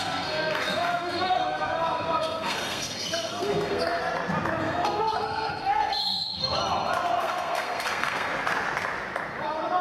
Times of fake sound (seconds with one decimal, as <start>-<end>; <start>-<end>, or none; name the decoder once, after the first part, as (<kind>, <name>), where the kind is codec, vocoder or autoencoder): 0.0-4.0 (codec, SNAC); 4.6-6.6; 7.2-8.3; 9.4-9.8